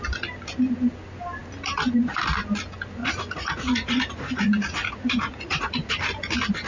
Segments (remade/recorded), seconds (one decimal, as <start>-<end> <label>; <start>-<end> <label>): 0.0-3.0 recorded; 3.0-5.9 remade; 5.9-6.7 recorded